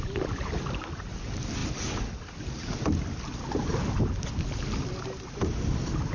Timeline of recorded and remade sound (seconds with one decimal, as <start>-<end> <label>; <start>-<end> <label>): 0.0-6.1 recorded